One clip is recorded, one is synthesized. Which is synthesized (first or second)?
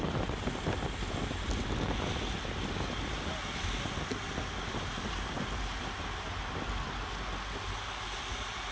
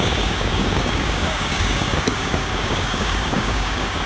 second